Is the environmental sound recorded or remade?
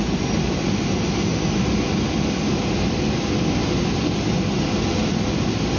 recorded